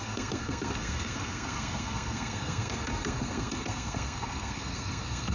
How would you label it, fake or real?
fake